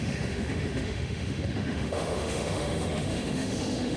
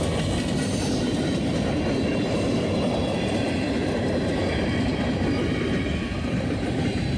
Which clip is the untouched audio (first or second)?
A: second